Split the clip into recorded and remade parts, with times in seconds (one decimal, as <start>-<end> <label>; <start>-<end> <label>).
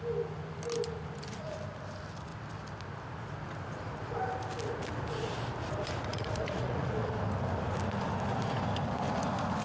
0.0-6.1 recorded; 6.1-7.1 remade; 7.1-9.6 recorded